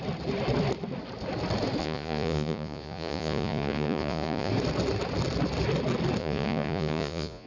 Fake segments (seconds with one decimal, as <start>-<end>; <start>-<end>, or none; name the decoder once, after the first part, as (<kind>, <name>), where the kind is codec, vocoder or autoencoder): 1.8-4.5 (vocoder, Vocos); 6.2-7.5